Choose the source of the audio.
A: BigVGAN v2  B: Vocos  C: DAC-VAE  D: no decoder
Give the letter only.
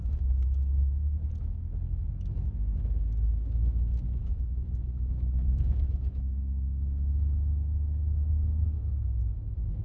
C